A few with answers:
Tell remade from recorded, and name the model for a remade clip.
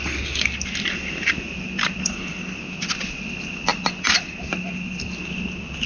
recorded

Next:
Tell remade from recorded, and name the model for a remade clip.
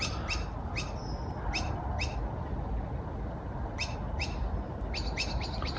recorded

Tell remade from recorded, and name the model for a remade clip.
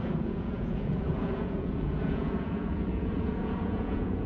remade, vocoder, Vocos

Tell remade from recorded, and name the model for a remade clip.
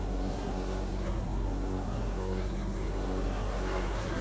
remade, codec, SNAC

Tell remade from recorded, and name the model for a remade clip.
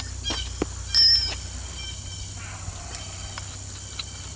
recorded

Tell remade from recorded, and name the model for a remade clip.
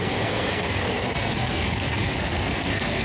remade, codec, SNAC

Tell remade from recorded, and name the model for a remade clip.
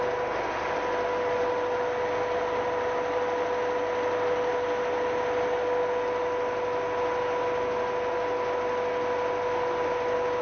recorded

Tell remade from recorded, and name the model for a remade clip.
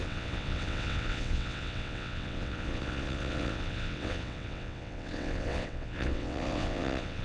remade, vocoder, WaveNeXt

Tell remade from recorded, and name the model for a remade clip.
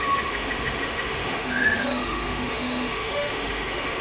remade, autoencoder, DAC-VAE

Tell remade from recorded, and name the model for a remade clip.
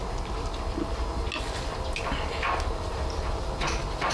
recorded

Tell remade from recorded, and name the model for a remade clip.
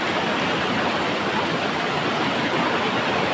recorded